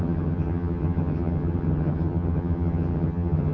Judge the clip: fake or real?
fake